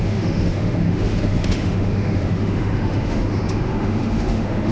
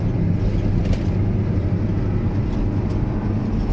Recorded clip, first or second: second